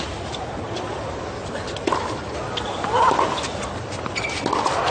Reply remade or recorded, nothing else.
recorded